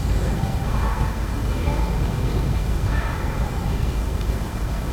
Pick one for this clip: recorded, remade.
remade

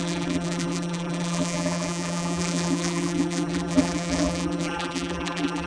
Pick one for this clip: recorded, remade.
remade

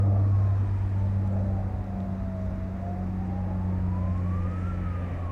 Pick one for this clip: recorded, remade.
recorded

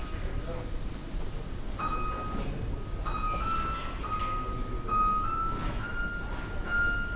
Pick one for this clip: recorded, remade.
recorded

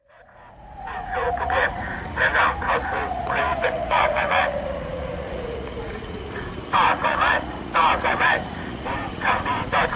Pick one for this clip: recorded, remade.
remade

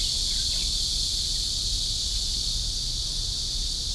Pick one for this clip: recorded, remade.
recorded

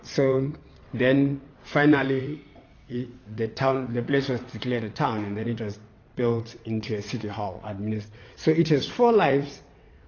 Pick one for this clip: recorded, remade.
remade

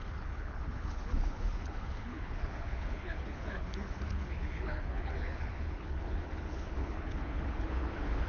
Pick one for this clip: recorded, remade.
remade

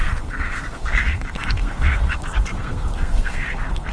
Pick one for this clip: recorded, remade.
remade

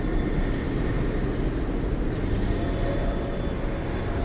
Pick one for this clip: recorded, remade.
recorded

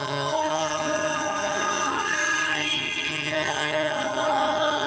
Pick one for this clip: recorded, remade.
remade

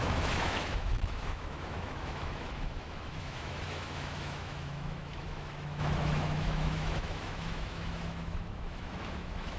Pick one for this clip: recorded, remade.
remade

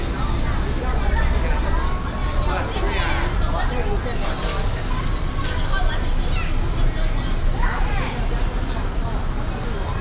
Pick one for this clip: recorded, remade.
recorded